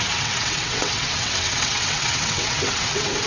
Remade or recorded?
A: remade